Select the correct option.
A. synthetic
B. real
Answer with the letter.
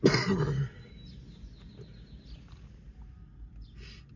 B